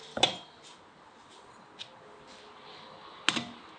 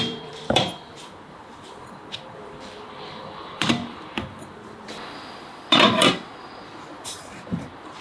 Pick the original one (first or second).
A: first